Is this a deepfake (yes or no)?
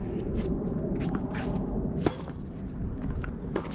no